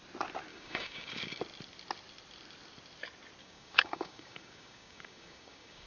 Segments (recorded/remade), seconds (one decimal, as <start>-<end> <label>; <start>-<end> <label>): 0.0-0.5 recorded; 0.5-1.4 remade; 1.4-3.4 recorded; 3.4-5.9 remade